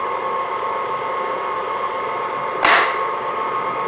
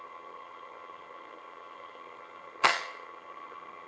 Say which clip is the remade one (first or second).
second